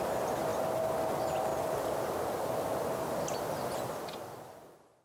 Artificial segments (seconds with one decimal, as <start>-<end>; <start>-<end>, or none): none